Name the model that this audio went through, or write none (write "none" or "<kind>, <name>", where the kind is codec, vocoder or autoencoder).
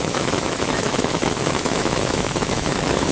autoencoder, DAC-VAE